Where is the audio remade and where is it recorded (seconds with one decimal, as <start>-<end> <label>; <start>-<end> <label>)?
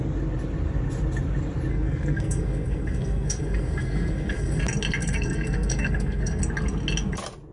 0.0-1.7 recorded; 1.7-4.6 remade; 4.6-5.0 recorded; 5.0-6.4 remade; 6.4-7.5 recorded